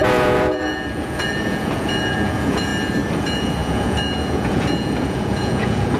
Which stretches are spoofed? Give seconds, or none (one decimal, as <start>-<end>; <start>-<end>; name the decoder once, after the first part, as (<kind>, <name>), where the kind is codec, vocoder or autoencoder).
0.0-2.7 (vocoder, Vocos); 3.2-6.0